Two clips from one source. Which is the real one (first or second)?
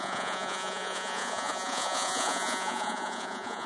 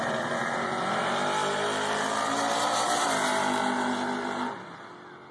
second